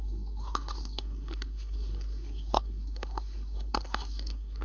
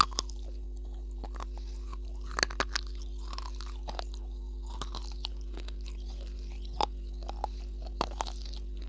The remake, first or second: first